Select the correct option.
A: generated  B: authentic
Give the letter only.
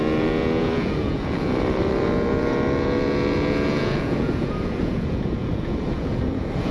A